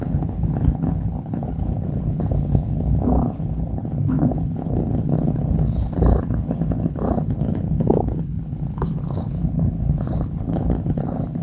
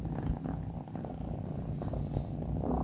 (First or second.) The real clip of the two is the second